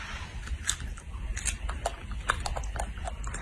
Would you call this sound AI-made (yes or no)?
no